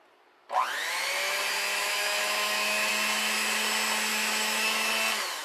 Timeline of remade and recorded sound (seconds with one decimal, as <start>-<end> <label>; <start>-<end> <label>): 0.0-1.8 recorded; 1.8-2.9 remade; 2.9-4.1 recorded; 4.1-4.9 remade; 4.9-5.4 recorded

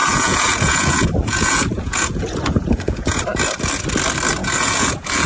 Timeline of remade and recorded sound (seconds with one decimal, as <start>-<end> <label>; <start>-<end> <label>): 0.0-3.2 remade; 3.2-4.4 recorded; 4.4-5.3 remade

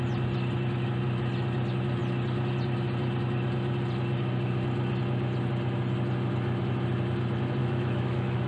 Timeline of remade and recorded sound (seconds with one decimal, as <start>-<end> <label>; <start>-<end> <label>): 0.0-7.6 recorded; 7.6-8.5 remade

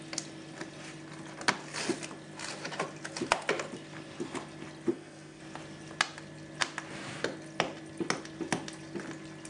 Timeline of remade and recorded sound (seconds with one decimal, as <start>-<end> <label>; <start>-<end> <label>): 0.0-4.9 recorded; 4.9-5.4 remade; 5.4-9.5 recorded

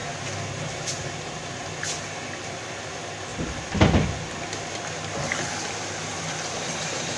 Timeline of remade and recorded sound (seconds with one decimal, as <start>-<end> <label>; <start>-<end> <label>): 0.0-3.3 recorded; 3.3-7.2 remade

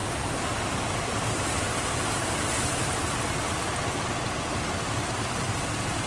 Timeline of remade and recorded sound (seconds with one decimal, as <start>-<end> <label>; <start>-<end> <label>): 0.0-2.9 remade; 2.9-5.0 recorded; 5.0-6.1 remade

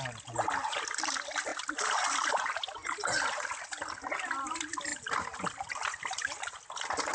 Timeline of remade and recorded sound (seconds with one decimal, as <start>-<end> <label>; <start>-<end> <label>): 0.0-7.1 recorded